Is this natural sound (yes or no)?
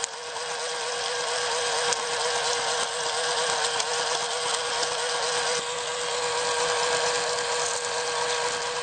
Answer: yes